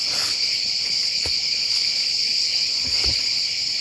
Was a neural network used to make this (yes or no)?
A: yes